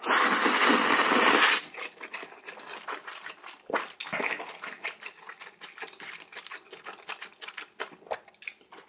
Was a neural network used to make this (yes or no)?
no